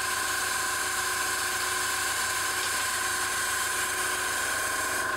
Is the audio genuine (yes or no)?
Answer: yes